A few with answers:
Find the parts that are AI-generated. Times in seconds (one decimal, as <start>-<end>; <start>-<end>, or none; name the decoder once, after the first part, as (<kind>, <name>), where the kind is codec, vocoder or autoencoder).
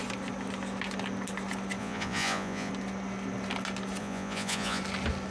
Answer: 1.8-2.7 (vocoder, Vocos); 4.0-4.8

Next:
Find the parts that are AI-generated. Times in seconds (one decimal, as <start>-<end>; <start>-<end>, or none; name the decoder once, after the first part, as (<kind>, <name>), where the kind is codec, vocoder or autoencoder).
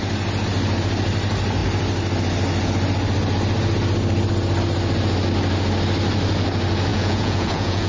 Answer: 6.9-7.9 (vocoder, Vocos)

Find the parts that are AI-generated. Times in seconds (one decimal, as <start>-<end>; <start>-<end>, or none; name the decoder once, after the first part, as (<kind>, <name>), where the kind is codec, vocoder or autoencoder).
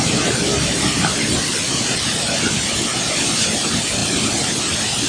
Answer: none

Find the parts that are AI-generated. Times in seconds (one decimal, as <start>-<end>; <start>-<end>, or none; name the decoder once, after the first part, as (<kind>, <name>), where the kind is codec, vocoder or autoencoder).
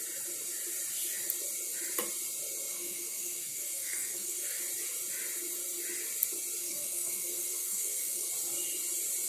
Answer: 2.7-4.6 (codec, SNAC); 6.6-8.3